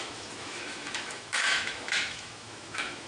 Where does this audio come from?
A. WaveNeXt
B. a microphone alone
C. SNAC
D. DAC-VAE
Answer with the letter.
D